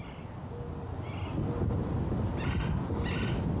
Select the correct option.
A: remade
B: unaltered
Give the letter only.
B